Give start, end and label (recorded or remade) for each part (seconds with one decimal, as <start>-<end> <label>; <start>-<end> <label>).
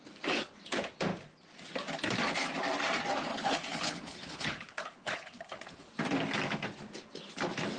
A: 0.0-3.3 recorded; 3.3-5.9 remade; 5.9-7.8 recorded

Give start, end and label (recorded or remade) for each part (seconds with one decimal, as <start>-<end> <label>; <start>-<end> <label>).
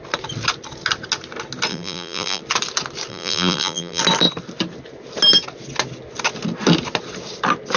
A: 0.0-1.7 recorded; 1.7-2.4 remade; 2.4-3.1 recorded; 3.1-4.0 remade; 4.0-7.8 recorded